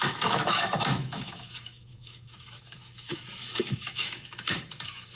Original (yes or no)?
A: no